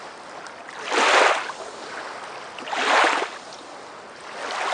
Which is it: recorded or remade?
recorded